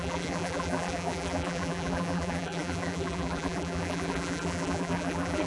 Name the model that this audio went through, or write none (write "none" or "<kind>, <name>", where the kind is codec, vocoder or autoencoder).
vocoder, BigVGAN v2